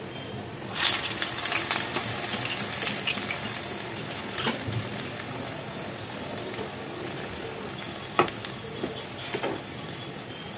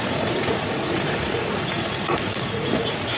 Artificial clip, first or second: second